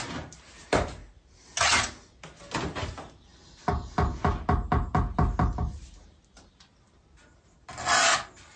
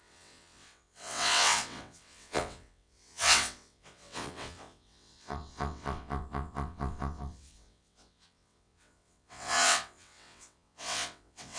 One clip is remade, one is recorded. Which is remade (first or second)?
second